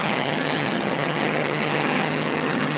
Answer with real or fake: fake